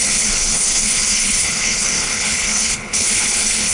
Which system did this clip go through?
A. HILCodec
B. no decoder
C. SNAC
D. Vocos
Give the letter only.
A